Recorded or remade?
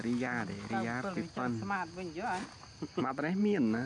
recorded